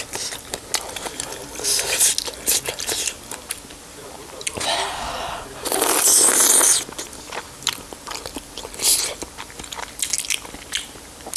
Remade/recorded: recorded